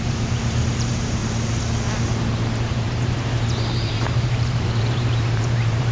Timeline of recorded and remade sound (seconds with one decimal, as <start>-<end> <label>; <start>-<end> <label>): 0.0-1.2 remade; 1.2-2.7 recorded; 2.7-5.9 remade

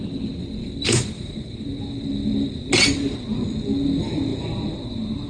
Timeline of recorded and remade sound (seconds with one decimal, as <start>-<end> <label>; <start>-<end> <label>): 0.0-0.6 recorded; 0.6-2.7 remade; 2.7-4.3 recorded; 4.3-5.3 remade